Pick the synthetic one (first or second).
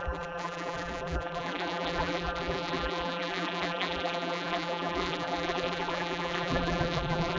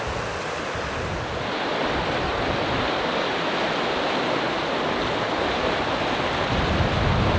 first